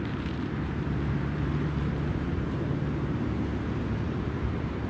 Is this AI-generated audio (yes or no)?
yes